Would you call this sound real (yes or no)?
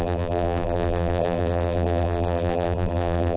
no